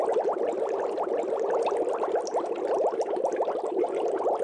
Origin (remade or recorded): recorded